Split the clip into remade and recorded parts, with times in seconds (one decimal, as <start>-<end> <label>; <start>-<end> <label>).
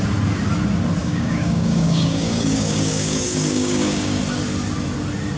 0.0-1.0 recorded; 1.0-4.2 remade; 4.2-5.4 recorded